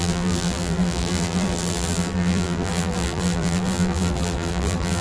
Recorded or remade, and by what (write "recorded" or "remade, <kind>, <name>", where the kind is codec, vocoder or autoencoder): remade, vocoder, BigVGAN v2